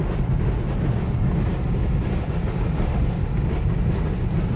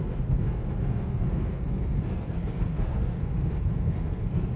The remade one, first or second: second